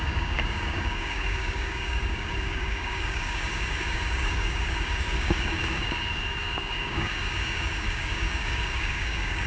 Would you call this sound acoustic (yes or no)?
no